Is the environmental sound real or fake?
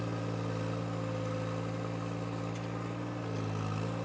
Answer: real